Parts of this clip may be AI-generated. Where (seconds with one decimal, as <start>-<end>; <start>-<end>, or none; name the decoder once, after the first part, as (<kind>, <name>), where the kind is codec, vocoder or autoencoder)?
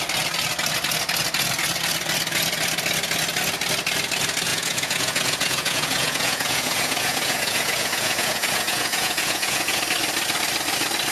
4.5-9.8 (vocoder, Vocos)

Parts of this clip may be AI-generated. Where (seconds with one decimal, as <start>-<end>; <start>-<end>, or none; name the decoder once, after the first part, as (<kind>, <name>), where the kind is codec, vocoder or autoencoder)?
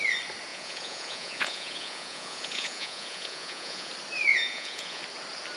0.5-3.9 (vocoder, Vocos); 4.3-5.0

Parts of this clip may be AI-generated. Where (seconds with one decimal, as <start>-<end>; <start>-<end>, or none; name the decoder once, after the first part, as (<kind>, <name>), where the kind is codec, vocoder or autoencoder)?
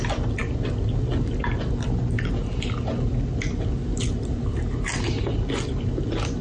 none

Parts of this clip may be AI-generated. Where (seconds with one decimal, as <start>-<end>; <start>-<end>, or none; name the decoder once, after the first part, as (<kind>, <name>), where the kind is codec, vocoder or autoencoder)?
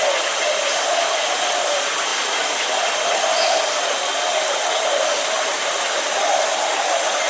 none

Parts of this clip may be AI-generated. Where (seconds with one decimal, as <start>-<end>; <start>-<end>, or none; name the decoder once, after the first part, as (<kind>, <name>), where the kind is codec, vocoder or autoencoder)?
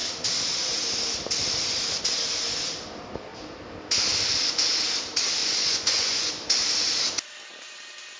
5.4-6.3 (vocoder, Vocos)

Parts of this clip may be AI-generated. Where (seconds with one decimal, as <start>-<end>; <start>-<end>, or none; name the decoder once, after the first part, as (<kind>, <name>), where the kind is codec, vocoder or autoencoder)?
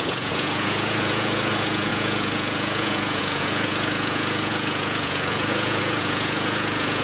0.0-7.0 (vocoder, Vocos)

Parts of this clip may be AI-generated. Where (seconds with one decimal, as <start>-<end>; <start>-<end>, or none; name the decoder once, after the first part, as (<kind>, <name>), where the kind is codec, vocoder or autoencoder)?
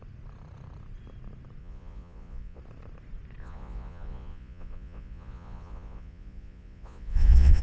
1.6-2.6 (vocoder, Vocos); 3.4-7.6